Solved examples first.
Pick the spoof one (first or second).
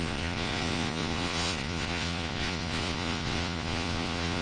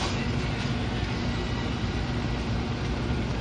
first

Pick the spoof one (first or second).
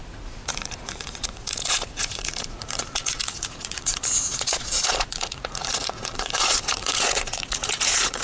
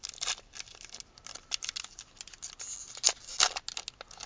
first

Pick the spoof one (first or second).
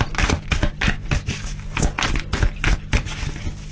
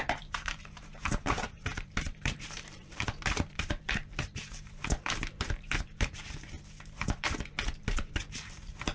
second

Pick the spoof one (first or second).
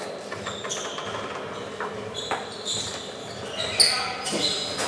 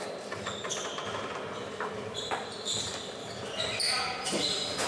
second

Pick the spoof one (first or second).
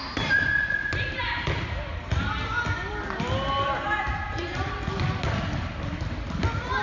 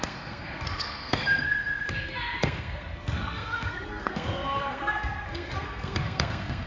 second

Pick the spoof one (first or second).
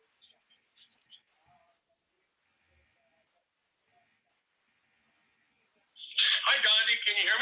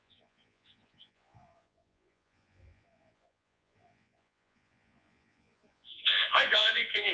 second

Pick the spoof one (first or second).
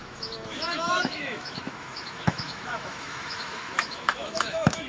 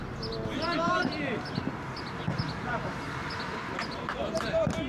first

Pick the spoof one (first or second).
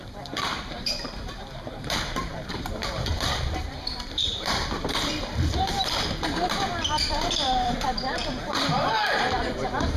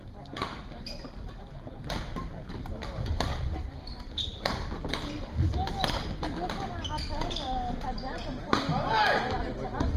first